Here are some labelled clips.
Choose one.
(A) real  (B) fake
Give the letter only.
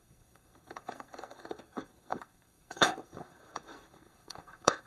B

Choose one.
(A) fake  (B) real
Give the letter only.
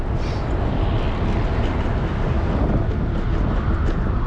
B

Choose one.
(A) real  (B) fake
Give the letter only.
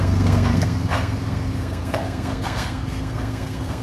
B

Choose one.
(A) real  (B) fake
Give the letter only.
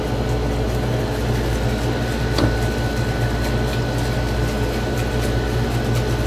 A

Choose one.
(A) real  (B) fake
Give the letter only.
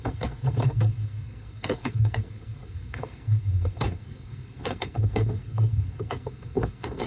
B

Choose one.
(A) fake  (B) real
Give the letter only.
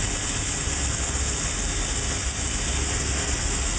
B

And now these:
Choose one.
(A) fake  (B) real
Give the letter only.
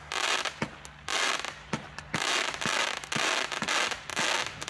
B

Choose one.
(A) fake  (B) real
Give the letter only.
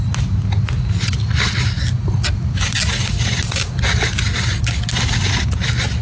B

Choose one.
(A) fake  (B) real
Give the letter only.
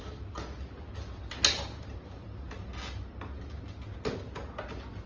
B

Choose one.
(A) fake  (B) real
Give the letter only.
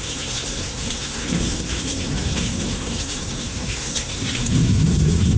A